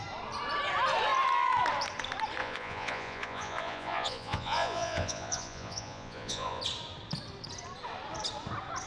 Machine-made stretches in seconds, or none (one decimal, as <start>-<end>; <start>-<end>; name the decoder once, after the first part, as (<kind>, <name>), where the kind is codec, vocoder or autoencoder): 2.4-6.6 (vocoder, Vocos)